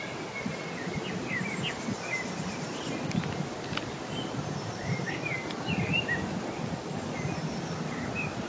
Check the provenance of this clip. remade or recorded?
recorded